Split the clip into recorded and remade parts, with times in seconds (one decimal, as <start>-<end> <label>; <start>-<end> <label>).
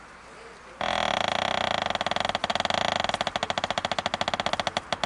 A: 0.0-5.1 recorded